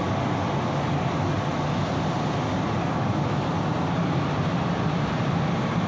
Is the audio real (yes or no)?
yes